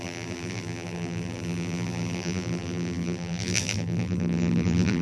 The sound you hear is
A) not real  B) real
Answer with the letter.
A